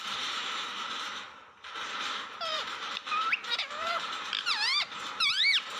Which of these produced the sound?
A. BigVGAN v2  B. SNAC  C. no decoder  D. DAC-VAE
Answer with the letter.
A